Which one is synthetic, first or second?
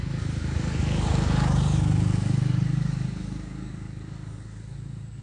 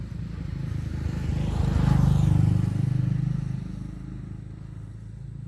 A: first